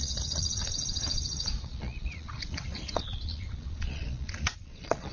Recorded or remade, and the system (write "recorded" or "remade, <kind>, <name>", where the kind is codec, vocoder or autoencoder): remade, vocoder, Vocos